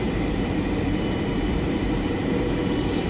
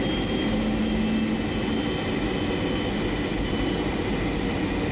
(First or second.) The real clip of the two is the second